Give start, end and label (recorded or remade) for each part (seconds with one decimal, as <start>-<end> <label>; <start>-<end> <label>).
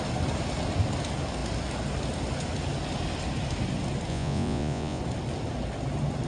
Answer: 0.0-4.1 recorded; 4.1-5.0 remade; 5.0-6.3 recorded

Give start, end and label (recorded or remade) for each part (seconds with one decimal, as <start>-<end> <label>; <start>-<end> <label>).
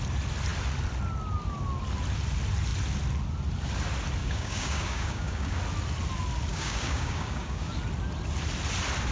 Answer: 0.0-4.2 recorded; 4.2-5.6 remade; 5.6-6.5 recorded; 6.5-7.7 remade; 7.7-9.1 recorded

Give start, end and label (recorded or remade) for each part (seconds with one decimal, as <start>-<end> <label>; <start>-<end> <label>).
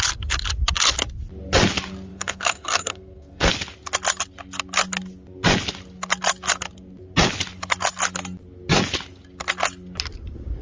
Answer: 0.0-2.1 recorded; 2.1-3.5 remade; 3.5-10.6 recorded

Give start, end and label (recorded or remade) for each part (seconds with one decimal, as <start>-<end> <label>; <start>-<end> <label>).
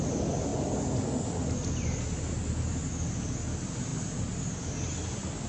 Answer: 0.0-5.5 recorded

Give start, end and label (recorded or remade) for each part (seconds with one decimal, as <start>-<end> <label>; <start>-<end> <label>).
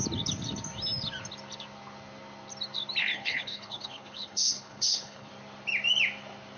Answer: 0.0-3.0 recorded; 3.0-5.3 remade; 5.3-6.6 recorded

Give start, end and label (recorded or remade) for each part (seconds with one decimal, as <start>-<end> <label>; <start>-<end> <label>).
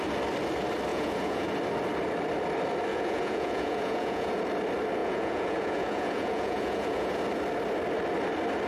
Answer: 0.0-0.9 recorded; 0.9-1.5 remade; 1.5-2.9 recorded; 2.9-4.4 remade; 4.4-5.0 recorded; 5.0-7.2 remade; 7.2-8.7 recorded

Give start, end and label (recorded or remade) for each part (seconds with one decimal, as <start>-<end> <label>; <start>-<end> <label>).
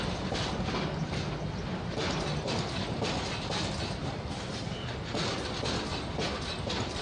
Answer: 0.0-7.0 recorded